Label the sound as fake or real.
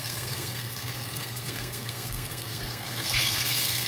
fake